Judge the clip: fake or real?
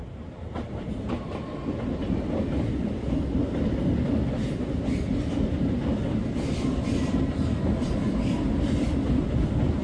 real